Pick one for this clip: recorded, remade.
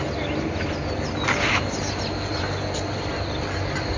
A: recorded